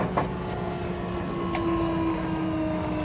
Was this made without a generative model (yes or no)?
yes